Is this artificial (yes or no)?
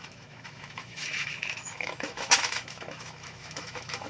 yes